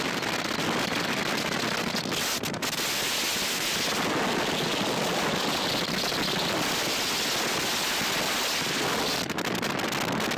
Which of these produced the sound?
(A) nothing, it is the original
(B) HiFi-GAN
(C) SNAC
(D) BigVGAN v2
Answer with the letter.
A